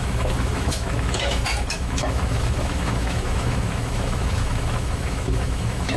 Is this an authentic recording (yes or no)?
no